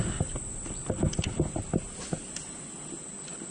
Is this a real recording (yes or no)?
yes